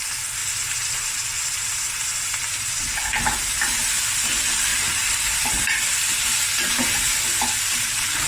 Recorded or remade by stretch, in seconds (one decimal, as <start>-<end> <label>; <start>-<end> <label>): 0.0-4.7 recorded; 4.7-6.1 remade; 6.1-8.3 recorded